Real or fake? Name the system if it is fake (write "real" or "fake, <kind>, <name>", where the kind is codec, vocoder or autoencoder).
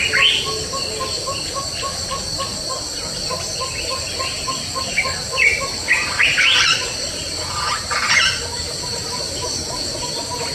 real